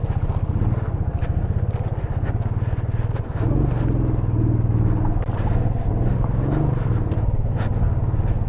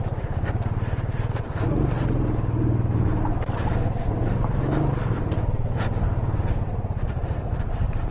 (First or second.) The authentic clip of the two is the first